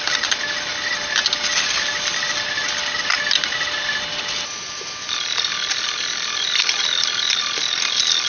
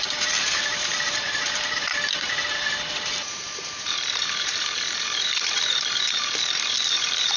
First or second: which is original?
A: first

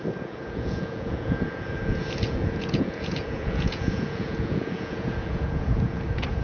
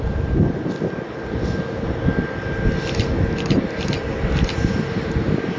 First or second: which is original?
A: second